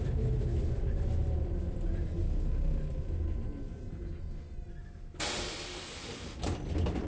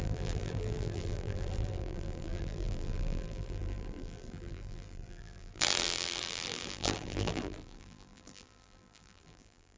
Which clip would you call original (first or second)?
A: first